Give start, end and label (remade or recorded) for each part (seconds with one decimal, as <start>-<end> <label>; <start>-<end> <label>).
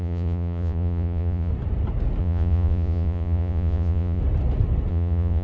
0.0-1.5 remade; 1.5-2.2 recorded; 2.2-4.2 remade; 4.2-4.9 recorded; 4.9-5.4 remade